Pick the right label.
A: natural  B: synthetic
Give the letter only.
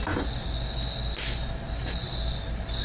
A